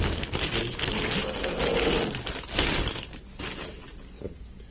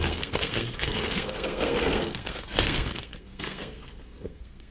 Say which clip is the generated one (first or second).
second